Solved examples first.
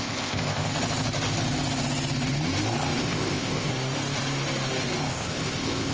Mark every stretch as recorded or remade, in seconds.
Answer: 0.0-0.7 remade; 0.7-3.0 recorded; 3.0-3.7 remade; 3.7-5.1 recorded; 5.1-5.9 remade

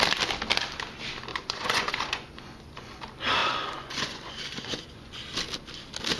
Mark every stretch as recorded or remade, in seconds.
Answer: 0.0-1.3 recorded; 1.3-3.0 remade; 3.0-3.4 recorded; 3.4-5.2 remade; 5.2-6.2 recorded

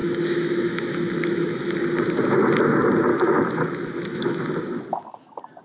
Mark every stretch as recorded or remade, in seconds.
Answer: 0.0-1.6 remade; 1.6-3.1 recorded; 3.1-4.4 remade; 4.4-5.6 recorded

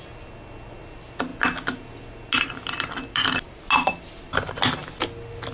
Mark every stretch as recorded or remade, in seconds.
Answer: 0.0-5.5 recorded